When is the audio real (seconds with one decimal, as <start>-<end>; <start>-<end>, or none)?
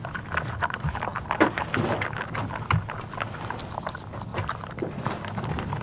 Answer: 0.0-5.8